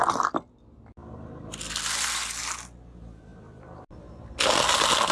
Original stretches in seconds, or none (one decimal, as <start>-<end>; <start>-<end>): 0.0-1.0; 2.4-5.1

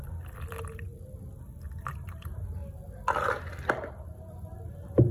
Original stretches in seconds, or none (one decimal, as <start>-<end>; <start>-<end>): 0.9-1.9; 2.6-3.9

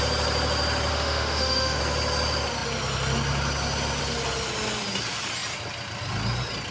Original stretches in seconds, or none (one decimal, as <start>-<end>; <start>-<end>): 0.0-0.9; 1.8-6.7

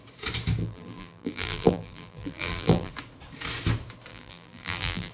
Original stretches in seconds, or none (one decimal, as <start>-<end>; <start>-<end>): 0.0-0.6; 2.9-4.1

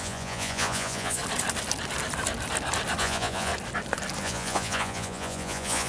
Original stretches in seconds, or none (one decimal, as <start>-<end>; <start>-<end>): 1.2-3.0; 3.5-4.2

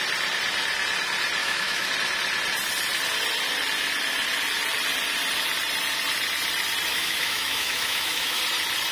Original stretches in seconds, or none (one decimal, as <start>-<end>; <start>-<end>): 0.0-1.4; 1.9-6.9; 8.4-8.9

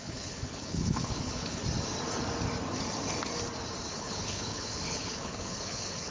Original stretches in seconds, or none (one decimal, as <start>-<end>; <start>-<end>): 1.6-3.9